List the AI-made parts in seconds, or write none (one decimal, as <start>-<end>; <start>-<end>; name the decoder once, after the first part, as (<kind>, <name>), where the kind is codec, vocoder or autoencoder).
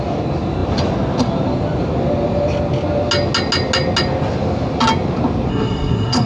5.5-6.3 (codec, SNAC)